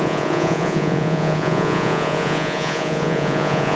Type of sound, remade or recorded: remade